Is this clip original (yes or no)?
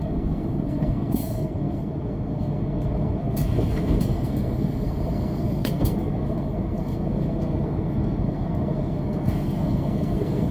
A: no